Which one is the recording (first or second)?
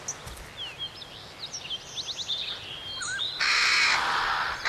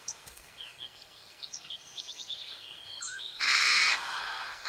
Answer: first